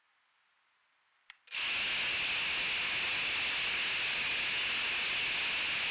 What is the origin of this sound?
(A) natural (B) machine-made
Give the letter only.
A